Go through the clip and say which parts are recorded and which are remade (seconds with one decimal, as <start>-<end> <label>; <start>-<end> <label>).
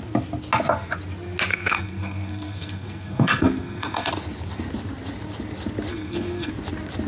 0.0-1.5 recorded; 1.5-4.1 remade; 4.1-5.9 recorded; 5.9-6.5 remade; 6.5-7.1 recorded